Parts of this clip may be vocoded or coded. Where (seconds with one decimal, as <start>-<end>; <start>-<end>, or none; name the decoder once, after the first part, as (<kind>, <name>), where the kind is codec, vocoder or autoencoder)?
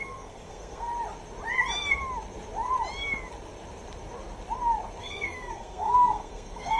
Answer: 0.0-0.9 (codec, SNAC); 5.0-6.8